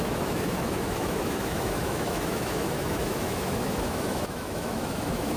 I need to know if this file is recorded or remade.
remade